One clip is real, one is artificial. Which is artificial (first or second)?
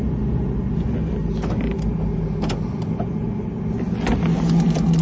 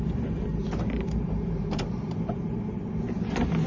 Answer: second